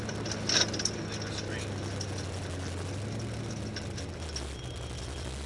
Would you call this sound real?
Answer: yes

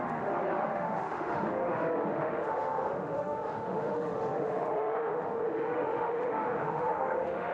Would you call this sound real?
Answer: no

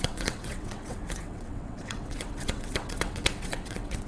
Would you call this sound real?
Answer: no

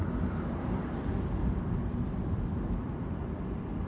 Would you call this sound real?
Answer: no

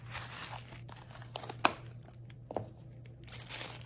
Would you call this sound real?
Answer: yes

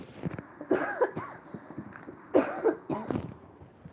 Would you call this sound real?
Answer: yes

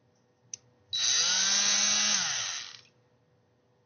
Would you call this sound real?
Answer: yes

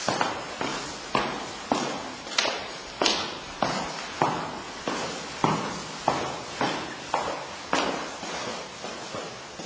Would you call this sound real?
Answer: yes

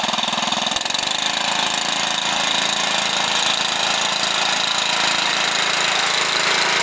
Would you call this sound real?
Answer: yes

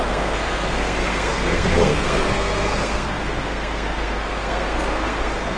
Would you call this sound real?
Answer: no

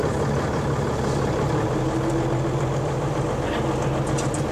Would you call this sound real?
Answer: yes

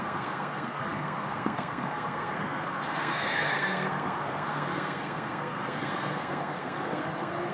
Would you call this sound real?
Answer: no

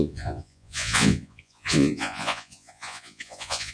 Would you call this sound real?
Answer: no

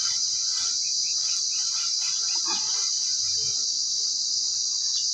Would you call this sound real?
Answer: no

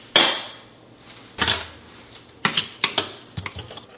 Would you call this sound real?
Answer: yes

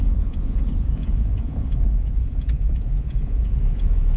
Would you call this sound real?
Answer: no